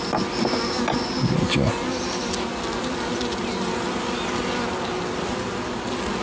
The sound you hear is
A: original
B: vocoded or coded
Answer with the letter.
A